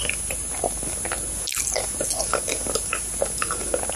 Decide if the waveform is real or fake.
real